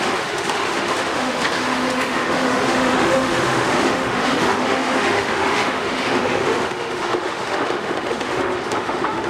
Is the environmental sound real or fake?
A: fake